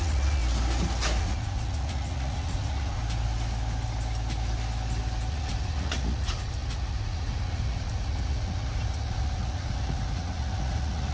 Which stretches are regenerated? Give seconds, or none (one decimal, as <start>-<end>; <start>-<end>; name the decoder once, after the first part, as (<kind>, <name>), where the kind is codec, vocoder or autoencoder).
0.0-0.4 (vocoder, Vocos); 1.2-3.0; 5.3-11.1